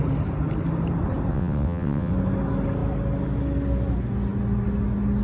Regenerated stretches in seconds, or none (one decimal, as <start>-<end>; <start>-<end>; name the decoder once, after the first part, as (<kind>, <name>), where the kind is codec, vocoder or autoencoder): 1.3-2.1 (vocoder, WaveNeXt)